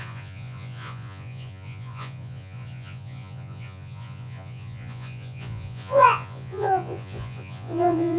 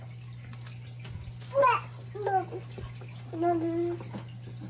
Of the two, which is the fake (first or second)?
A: first